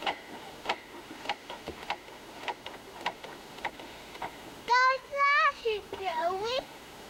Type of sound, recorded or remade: remade